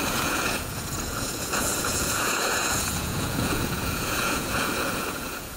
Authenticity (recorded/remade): remade